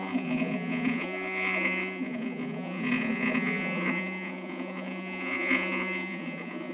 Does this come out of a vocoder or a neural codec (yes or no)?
yes